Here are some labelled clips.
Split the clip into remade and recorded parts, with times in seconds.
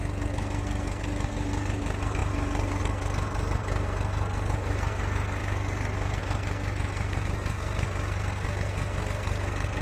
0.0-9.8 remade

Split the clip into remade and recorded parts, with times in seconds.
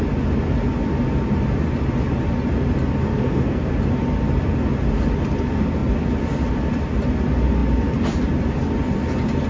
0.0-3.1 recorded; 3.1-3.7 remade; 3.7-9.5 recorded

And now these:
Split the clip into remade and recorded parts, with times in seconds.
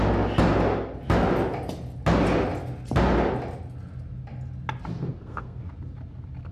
0.0-5.1 recorded; 5.1-5.6 remade; 5.6-6.5 recorded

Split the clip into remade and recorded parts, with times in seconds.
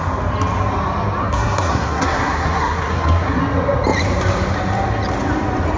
0.0-1.2 recorded; 1.2-3.4 remade; 3.4-5.8 recorded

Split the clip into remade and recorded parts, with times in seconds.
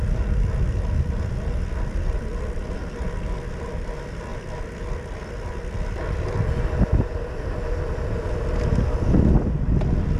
0.0-10.2 recorded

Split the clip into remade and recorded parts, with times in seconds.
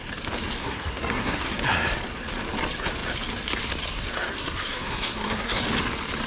0.0-0.6 recorded; 0.6-1.6 remade; 1.6-4.4 recorded; 4.4-5.6 remade; 5.6-6.3 recorded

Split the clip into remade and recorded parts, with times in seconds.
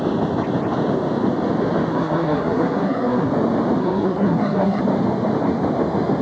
0.0-1.9 recorded; 1.9-3.3 remade; 3.3-3.8 recorded; 3.8-4.8 remade; 4.8-6.2 recorded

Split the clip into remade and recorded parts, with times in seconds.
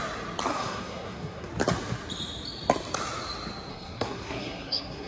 0.0-0.5 recorded; 0.5-1.5 remade; 1.5-3.7 recorded; 3.7-5.1 remade